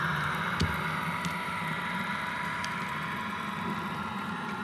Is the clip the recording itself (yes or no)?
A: yes